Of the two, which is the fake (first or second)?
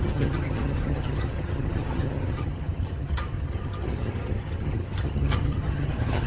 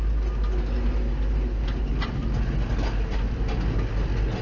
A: first